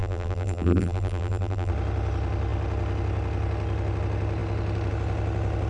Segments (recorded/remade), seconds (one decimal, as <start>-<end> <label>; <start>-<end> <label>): 0.0-1.7 remade; 1.7-5.7 recorded